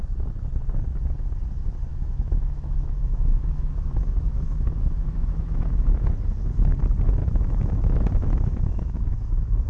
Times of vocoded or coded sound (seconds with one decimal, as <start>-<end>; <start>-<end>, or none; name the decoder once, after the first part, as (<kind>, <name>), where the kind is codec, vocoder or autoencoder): 1.9-6.1 (autoencoder, DAC-VAE); 7.2-9.7